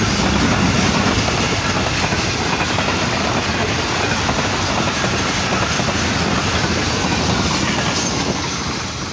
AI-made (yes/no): no